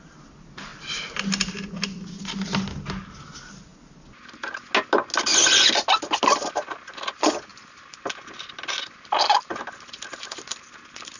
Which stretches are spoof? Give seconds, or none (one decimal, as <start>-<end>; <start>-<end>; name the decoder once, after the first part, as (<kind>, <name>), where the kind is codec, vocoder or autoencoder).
none